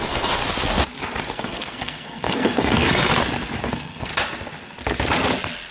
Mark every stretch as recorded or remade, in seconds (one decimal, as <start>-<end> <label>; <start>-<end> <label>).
0.0-0.4 remade; 0.4-1.3 recorded; 1.3-3.1 remade; 3.1-3.6 recorded; 3.6-4.1 remade; 4.1-5.7 recorded